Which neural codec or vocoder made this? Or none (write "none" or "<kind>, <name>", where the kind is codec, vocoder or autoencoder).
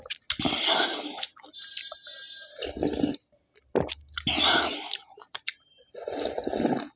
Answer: none